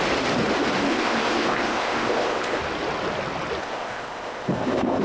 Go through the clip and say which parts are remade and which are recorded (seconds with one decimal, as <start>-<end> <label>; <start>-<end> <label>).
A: 0.0-0.9 recorded; 0.9-2.6 remade; 2.6-3.6 recorded; 3.6-5.0 remade